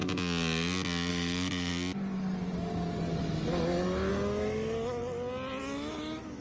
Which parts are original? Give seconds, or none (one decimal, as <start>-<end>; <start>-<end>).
0.0-1.1; 1.7-4.1; 5.0-5.6